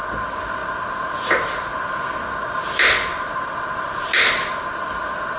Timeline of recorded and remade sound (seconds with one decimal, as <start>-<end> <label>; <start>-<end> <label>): 0.0-5.4 recorded